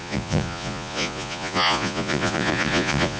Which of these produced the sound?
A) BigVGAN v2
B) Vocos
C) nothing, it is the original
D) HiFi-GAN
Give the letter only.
B